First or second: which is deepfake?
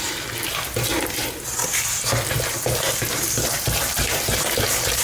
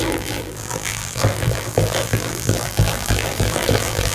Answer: second